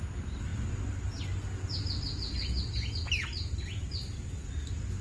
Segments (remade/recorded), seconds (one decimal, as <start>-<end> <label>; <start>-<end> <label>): 0.0-5.0 recorded